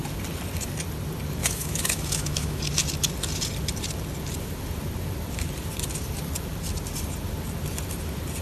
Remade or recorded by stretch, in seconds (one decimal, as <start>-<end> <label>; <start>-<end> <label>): 0.0-1.4 recorded; 1.4-2.6 remade; 2.6-8.4 recorded